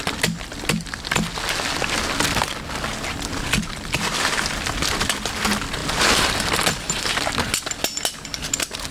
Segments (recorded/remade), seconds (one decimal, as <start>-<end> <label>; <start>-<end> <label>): 0.0-8.9 recorded

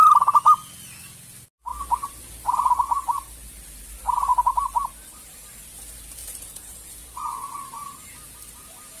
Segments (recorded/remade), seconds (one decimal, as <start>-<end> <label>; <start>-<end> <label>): 0.0-6.2 recorded; 6.2-7.6 remade; 7.6-9.0 recorded

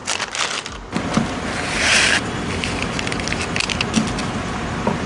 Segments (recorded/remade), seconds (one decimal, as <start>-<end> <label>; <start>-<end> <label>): 0.0-4.2 recorded; 4.2-5.1 remade